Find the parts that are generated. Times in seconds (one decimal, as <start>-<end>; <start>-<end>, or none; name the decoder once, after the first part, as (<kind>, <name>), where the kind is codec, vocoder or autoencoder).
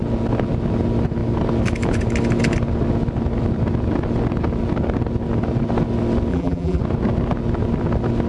6.3-6.8 (vocoder, BigVGAN v2)